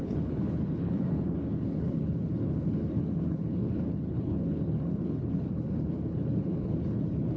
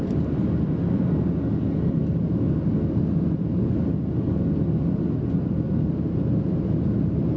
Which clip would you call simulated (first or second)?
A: first